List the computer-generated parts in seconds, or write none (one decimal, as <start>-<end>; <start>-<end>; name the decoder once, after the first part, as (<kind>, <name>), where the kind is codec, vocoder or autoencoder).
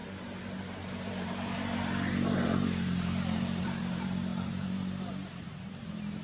0.0-6.2 (vocoder, BigVGAN v2)